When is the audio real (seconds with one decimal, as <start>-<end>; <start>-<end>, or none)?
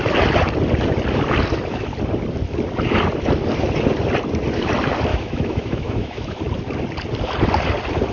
0.0-5.1; 6.4-8.1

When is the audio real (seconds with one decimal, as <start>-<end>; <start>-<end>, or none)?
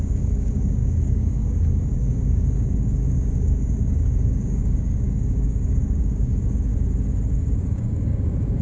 6.7-7.3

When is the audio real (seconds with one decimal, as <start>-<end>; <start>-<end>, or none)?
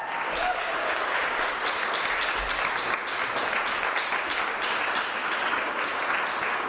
0.0-0.8; 1.5-6.7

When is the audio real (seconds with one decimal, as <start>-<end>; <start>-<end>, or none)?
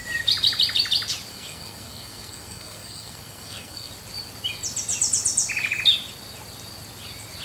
0.0-1.3; 3.9-7.4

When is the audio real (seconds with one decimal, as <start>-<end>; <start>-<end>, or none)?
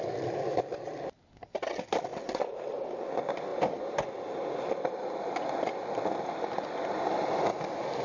0.0-8.0